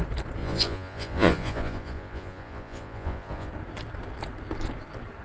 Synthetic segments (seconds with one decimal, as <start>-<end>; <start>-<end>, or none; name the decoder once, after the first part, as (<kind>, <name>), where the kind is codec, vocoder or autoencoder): 0.4-3.5 (vocoder, Vocos)